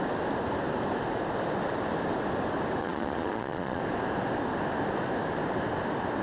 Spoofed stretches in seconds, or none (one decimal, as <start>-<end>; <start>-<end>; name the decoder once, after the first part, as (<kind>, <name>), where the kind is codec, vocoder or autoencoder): 2.8-3.8 (vocoder, Vocos)